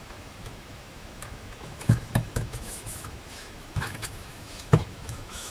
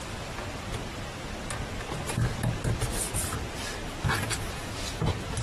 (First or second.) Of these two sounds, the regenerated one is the first